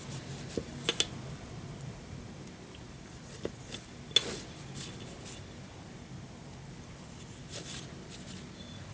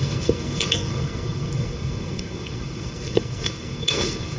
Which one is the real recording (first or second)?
first